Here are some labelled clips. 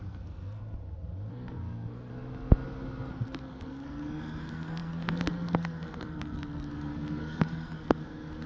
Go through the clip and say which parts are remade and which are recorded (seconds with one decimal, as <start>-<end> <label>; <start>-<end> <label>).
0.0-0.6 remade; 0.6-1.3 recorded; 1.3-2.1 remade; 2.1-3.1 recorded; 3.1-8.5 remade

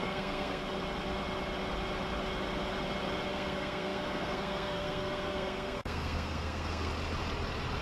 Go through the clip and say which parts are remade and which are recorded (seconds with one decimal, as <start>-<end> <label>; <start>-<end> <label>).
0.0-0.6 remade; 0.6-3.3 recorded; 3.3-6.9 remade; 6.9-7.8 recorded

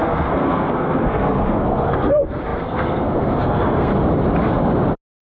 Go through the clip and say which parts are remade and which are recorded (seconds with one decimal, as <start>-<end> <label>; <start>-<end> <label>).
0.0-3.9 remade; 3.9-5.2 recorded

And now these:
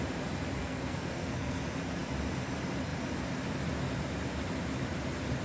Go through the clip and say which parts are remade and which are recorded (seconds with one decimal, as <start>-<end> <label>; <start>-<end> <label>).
0.0-0.6 recorded; 0.6-1.6 remade; 1.6-5.4 recorded

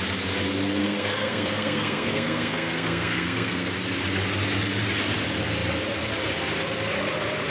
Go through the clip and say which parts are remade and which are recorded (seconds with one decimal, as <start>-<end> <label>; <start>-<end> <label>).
0.0-0.8 recorded; 0.8-3.7 remade; 3.7-7.5 recorded

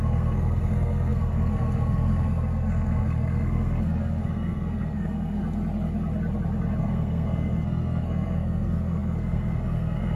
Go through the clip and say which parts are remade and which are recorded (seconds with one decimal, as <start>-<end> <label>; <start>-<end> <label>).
0.0-5.4 remade; 5.4-6.8 recorded; 6.8-10.2 remade